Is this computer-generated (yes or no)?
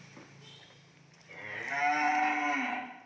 no